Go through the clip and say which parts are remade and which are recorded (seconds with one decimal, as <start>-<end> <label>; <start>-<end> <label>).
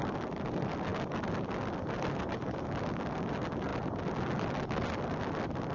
0.0-5.7 recorded